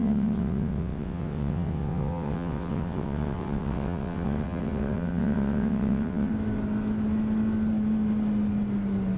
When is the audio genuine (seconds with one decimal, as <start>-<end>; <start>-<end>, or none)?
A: 6.3-9.2